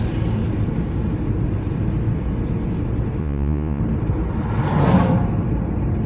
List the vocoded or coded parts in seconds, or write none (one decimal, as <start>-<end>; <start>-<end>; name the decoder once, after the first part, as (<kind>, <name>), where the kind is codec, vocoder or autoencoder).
3.2-3.8 (vocoder, Vocos)